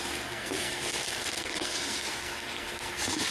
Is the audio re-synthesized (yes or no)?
yes